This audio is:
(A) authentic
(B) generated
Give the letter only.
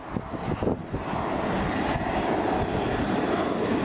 A